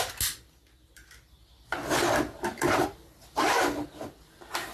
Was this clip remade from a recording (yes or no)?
no